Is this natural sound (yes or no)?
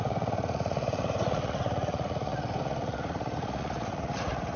no